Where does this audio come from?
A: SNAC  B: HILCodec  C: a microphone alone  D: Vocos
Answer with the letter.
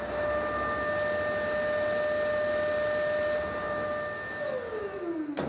C